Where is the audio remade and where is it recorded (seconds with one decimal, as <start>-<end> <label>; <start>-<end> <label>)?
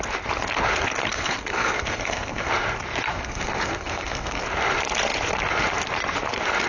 0.0-1.1 recorded; 1.1-2.5 remade; 2.5-3.1 recorded; 3.1-4.4 remade; 4.4-6.7 recorded